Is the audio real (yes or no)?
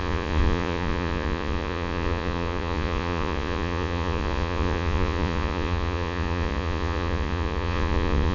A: no